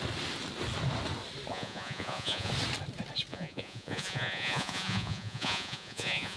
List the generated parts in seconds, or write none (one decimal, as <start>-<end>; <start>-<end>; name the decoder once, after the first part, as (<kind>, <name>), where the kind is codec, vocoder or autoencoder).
1.5-2.5 (vocoder, Vocos); 3.3-6.4